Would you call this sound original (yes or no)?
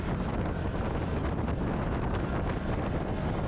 yes